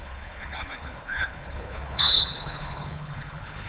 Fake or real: fake